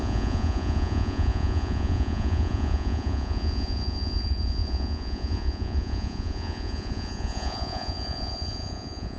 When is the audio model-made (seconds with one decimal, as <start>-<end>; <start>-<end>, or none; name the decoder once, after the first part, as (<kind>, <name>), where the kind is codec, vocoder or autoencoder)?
0.0-9.2 (vocoder, Vocos)